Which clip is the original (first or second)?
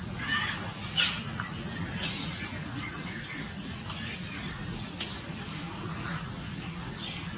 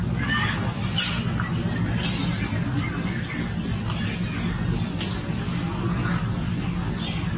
second